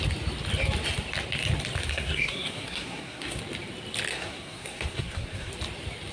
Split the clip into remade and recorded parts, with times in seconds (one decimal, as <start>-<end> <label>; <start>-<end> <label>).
0.0-1.9 recorded; 1.9-3.4 remade; 3.4-4.1 recorded; 4.1-5.5 remade; 5.5-6.1 recorded